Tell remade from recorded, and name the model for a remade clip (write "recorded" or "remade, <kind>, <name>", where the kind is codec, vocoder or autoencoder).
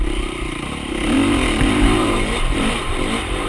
remade, vocoder, BigVGAN v2